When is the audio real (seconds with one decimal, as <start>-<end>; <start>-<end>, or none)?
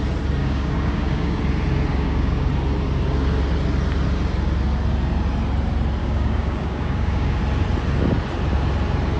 0.0-0.4; 1.4-1.9; 2.5-6.0; 7.4-9.2